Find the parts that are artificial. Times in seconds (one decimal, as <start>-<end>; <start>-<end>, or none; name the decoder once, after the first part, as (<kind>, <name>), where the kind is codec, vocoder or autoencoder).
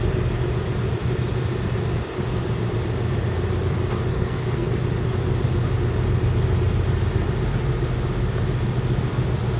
4.1-4.7 (codec, SNAC)